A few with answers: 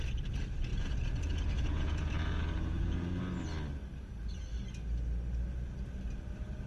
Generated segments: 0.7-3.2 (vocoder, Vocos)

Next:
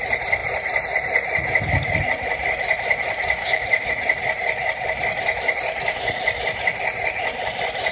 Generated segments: 3.4-3.9 (codec, DAC)

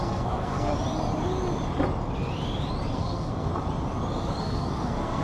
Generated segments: 0.0-0.7 (codec, SNAC); 2.9-3.5; 4.4-5.2

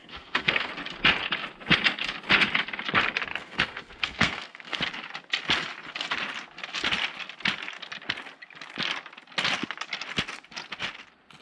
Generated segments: 0.0-0.7 (codec, SNAC); 3.3-4.8

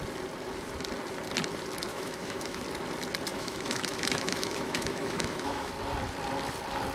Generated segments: 1.9-2.6 (autoencoder, DAC-VAE); 3.3-5.7

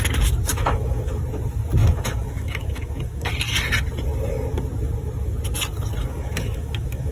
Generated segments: 0.5-1.2 (autoencoder, DAC-VAE); 1.8-3.3; 6.0-7.1

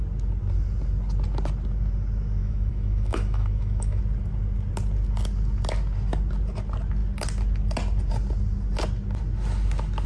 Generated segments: 2.4-4.0 (autoencoder, DAC-VAE)

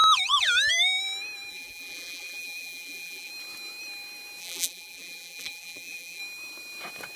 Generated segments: 1.5-3.3 (vocoder, BigVGAN v2); 4.4-6.2